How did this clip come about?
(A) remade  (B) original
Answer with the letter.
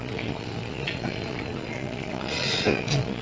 A